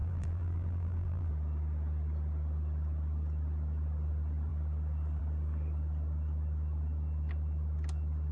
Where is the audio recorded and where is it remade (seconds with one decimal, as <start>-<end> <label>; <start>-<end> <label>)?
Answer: 0.0-1.3 remade; 1.3-8.3 recorded